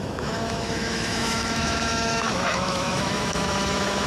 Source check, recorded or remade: remade